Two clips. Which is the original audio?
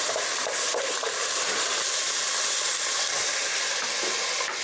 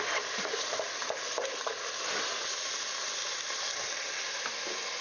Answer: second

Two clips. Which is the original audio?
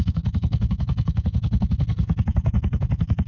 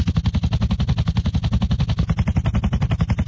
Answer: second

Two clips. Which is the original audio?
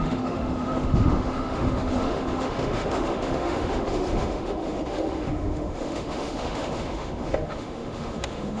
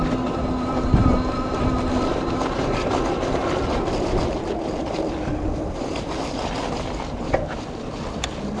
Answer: second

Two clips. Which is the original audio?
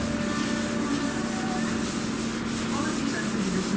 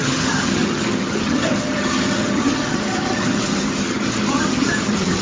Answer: first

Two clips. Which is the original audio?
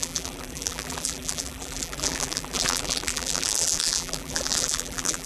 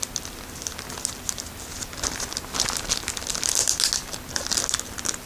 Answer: second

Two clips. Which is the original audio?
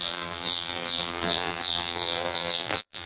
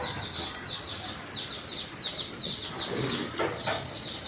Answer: second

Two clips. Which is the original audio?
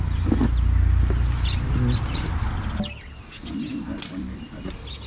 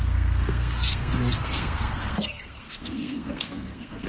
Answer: first